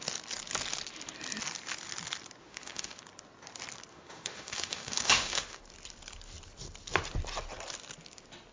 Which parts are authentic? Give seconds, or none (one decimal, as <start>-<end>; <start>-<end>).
0.0-2.4; 3.0-3.9; 5.6-8.5